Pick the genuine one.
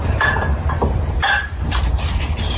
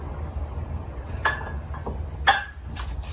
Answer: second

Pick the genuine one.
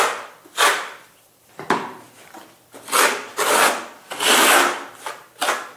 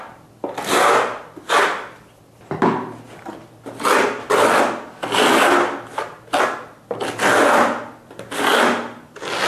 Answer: second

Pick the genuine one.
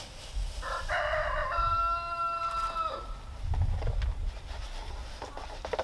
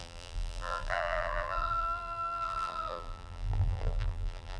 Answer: first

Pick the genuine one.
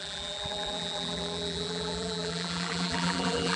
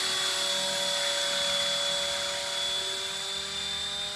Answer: second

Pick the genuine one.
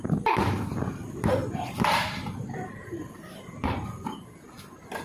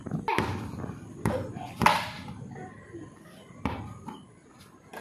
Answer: second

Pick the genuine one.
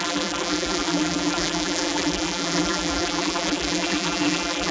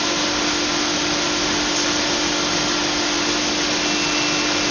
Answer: second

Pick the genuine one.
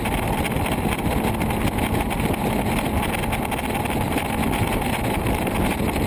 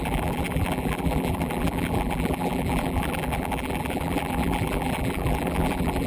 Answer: first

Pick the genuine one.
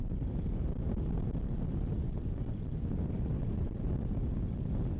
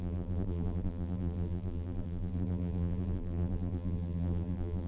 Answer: first